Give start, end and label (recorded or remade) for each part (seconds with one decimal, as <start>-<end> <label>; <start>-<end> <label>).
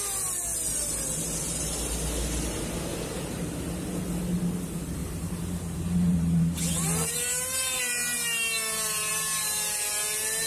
0.0-2.9 recorded; 2.9-4.0 remade; 4.0-5.0 recorded; 5.0-7.8 remade; 7.8-10.5 recorded